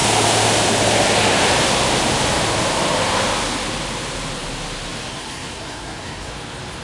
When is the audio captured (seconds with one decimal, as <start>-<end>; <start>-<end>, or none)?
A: 0.0-5.1; 6.3-6.8